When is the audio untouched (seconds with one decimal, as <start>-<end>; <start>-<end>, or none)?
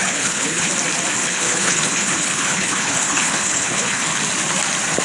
0.7-1.2; 4.2-5.0